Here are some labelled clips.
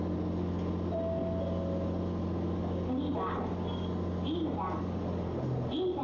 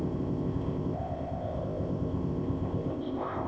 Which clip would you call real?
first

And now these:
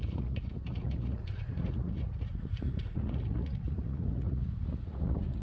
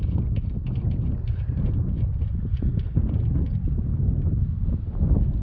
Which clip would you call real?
second